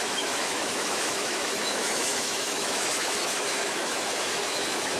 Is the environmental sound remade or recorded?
remade